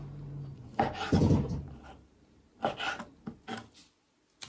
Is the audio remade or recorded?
recorded